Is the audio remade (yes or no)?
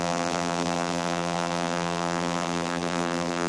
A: yes